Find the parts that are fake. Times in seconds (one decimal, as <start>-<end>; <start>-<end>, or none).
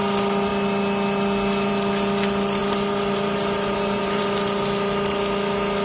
2.6-4.2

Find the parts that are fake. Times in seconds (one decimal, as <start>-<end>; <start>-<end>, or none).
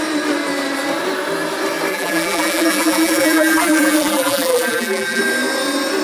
1.9-5.2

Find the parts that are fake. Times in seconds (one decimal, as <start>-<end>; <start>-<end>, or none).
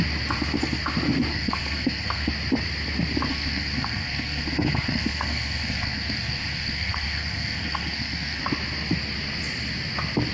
1.3-2.3; 3.3-8.4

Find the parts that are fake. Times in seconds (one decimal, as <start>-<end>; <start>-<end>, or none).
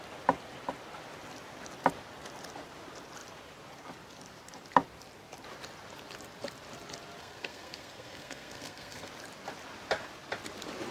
7.2-9.1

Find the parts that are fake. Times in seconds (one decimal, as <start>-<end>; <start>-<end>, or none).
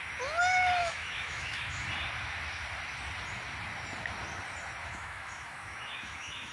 0.8-1.9; 4.8-6.5